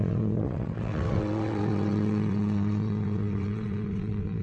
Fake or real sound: fake